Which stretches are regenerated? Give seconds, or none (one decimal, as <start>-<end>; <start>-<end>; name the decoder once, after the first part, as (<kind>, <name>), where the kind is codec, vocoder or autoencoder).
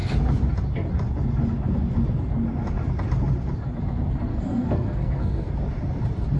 4.3-5.5 (codec, SNAC)